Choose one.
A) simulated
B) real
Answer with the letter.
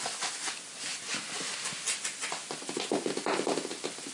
B